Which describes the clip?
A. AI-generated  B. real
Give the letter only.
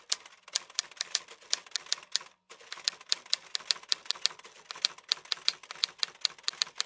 B